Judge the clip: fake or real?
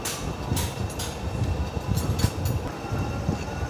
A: real